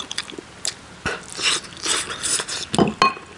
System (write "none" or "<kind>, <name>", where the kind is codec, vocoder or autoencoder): none